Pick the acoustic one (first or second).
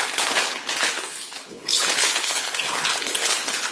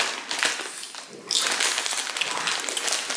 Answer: second